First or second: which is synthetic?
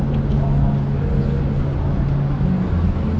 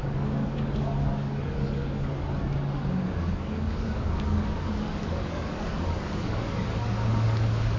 second